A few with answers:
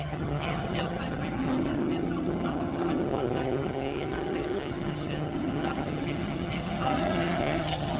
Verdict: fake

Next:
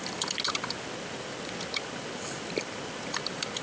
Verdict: real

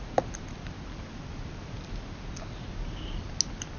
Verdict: real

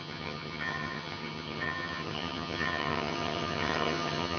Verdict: fake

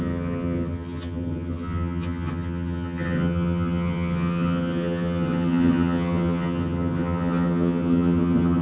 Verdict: fake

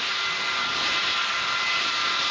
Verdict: real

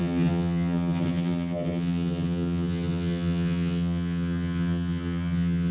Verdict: fake